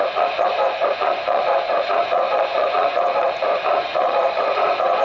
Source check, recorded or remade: remade